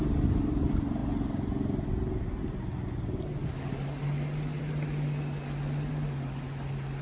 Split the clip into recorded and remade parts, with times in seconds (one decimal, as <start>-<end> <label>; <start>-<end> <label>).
0.0-7.0 recorded